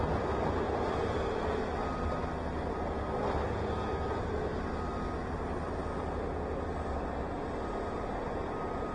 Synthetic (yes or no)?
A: no